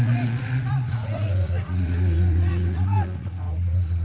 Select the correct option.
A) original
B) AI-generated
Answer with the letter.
B